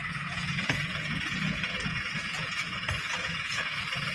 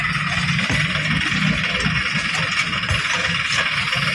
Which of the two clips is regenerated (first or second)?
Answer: first